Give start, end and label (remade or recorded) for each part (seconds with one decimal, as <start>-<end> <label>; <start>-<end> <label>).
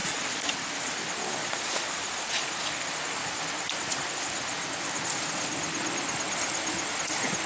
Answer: 0.0-0.5 remade; 0.5-1.4 recorded; 1.4-2.8 remade; 2.8-7.5 recorded